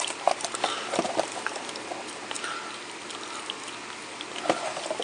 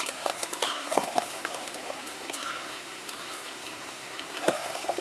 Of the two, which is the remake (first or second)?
second